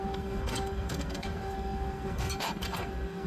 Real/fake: fake